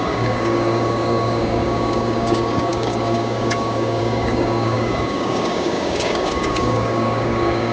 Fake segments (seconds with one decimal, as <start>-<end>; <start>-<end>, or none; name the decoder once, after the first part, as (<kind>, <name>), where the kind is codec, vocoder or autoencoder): 0.0-7.7 (codec, DAC)